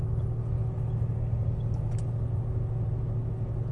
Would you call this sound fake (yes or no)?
no